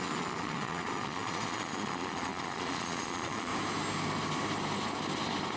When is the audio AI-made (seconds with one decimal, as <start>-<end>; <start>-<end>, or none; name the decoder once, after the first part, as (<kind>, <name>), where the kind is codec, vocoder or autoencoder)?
0.0-3.5 (vocoder, Vocos)